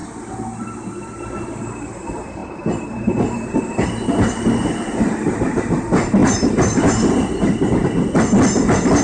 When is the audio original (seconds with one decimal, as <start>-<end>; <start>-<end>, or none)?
0.0-2.4; 5.8-6.2; 7.7-9.0